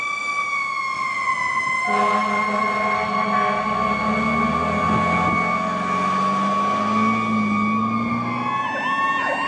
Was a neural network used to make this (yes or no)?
no